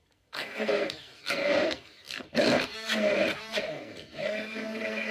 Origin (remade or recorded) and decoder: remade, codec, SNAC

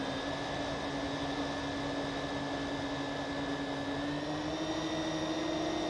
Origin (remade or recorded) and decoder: recorded